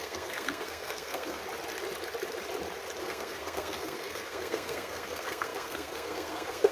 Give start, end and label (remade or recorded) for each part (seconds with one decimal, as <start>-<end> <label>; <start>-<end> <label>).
0.0-1.4 remade; 1.4-3.0 recorded; 3.0-6.7 remade